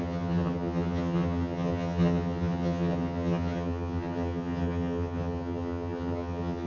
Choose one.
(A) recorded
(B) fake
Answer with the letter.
B